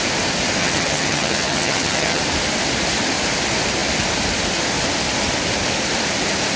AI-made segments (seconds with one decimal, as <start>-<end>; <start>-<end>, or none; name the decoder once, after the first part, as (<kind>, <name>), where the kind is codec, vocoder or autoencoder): 0.6-2.2 (vocoder, HiFi-GAN)